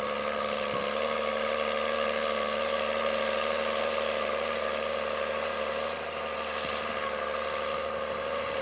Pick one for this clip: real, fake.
real